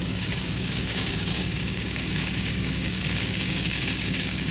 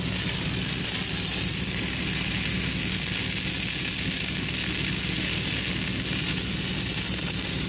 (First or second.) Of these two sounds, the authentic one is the second